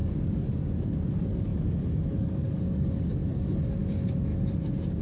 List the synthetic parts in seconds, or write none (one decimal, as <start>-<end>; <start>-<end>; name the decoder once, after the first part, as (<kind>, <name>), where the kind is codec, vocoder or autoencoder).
0.0-1.5 (codec, DAC); 2.2-4.3